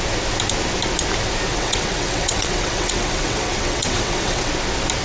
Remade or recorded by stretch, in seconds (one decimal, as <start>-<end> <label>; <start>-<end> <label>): 0.0-1.5 recorded; 1.5-4.5 remade; 4.5-5.0 recorded